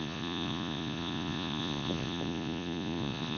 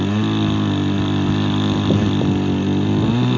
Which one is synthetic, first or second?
first